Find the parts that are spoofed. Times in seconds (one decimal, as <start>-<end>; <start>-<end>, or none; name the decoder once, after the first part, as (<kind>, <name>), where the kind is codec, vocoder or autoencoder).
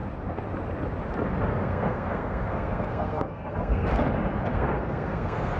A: 1.5-3.9 (codec, SNAC); 4.5-5.6